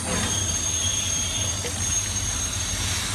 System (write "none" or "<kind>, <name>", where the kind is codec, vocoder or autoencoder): none